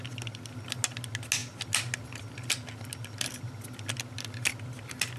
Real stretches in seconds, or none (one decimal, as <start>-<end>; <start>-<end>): 0.0-5.2